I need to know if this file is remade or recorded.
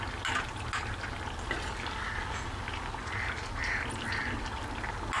recorded